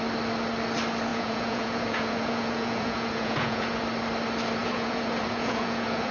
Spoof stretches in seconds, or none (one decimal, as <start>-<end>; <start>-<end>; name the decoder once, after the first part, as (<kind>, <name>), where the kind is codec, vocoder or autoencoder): 1.1-3.8 (vocoder, Vocos); 4.6-6.1